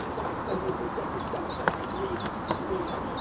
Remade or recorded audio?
recorded